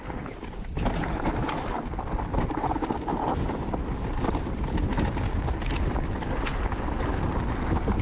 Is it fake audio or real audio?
real